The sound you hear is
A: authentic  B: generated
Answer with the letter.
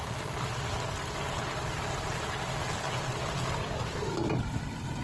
A